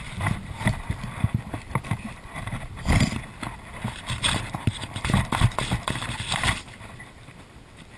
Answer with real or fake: fake